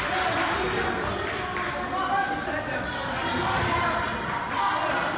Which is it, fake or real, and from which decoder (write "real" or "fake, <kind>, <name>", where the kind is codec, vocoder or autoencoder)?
real